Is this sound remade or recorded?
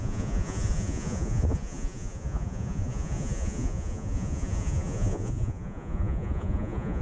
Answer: remade